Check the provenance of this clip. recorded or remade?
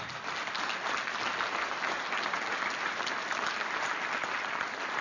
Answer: recorded